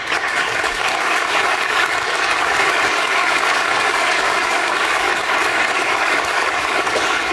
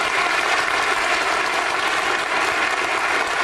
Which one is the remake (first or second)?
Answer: first